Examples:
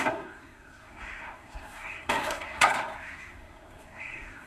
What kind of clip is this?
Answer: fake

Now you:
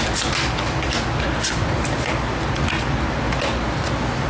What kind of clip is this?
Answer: real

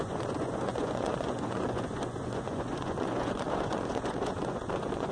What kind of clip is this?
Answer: fake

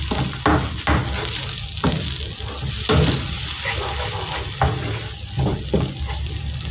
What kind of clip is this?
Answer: real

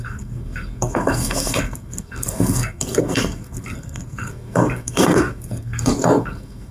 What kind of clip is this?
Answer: fake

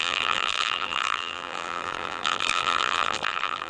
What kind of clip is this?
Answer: fake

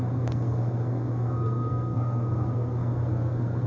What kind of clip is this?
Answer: fake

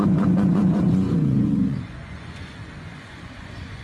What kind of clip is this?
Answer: fake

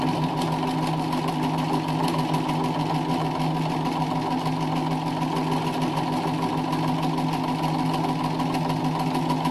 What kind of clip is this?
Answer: real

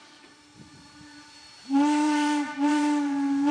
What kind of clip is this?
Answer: fake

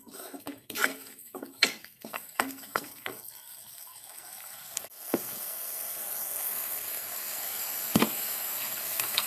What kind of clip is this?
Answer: fake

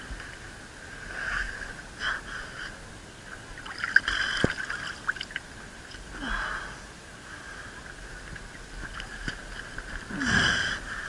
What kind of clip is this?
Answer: real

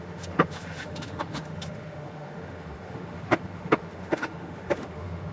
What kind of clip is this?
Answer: fake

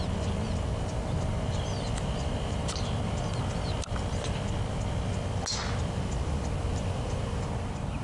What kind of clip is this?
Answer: real